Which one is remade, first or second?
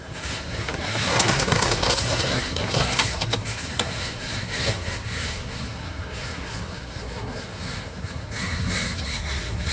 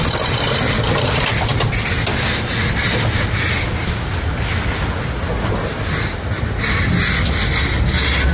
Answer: first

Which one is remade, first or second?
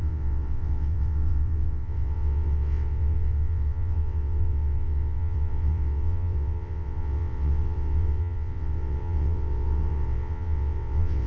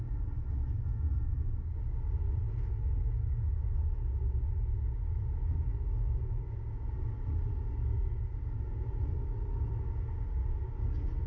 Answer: first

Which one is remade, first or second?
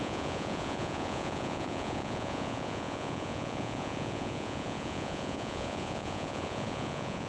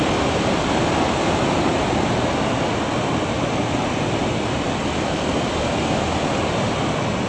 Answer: first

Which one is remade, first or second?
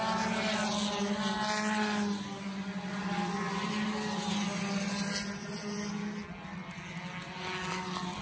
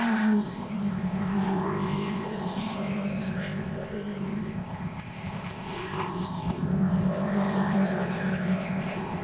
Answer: second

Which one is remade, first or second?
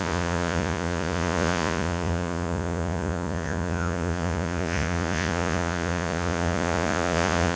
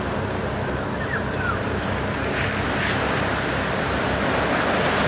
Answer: first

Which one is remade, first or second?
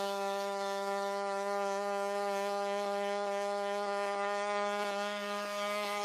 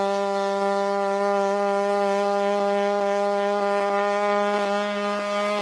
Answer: first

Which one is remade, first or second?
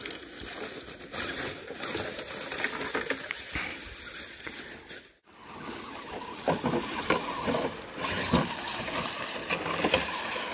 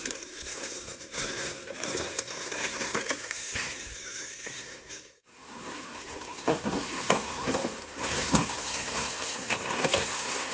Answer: second